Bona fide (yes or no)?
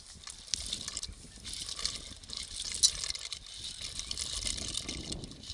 yes